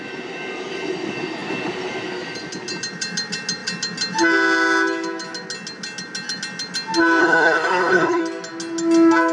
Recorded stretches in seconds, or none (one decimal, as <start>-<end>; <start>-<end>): 0.0-7.2; 8.2-9.3